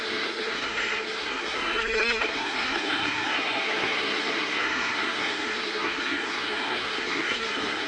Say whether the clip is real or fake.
fake